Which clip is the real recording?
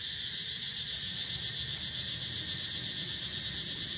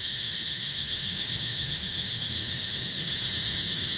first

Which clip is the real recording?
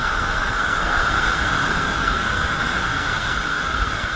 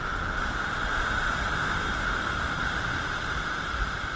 second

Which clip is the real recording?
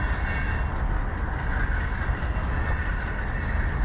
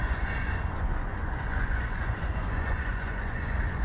first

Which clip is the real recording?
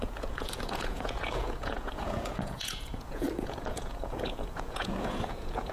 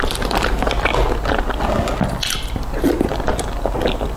second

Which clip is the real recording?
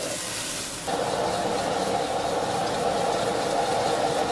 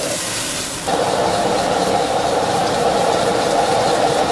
first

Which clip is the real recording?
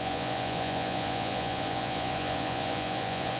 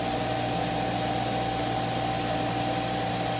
second